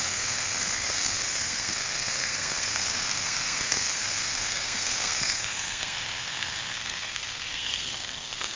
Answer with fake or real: fake